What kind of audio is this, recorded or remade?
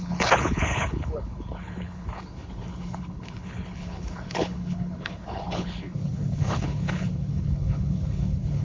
remade